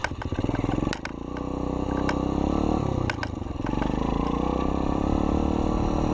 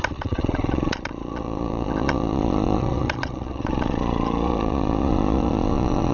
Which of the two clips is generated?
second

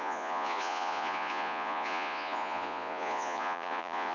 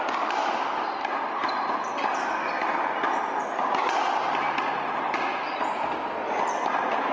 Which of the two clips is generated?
first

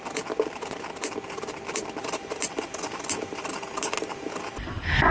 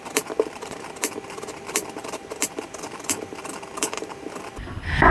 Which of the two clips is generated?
second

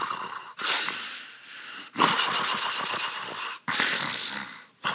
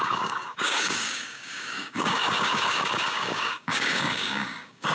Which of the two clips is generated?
second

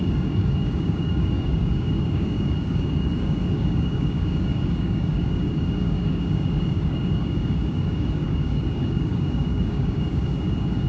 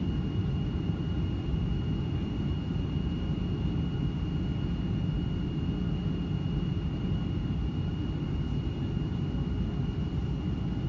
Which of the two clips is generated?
first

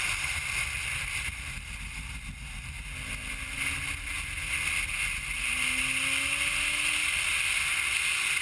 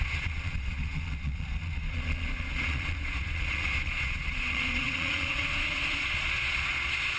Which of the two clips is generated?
second